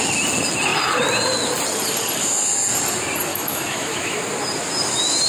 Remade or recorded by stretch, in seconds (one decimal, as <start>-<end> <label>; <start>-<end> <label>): 0.0-3.3 recorded; 3.3-4.2 remade; 4.2-5.3 recorded